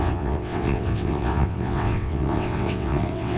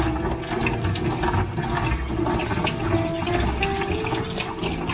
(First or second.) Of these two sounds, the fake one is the first